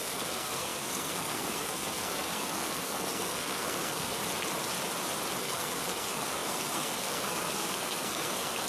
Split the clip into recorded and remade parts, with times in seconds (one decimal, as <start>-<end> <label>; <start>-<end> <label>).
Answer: 0.0-4.2 remade; 4.2-5.4 recorded; 5.4-8.7 remade